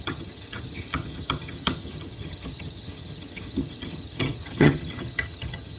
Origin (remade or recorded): remade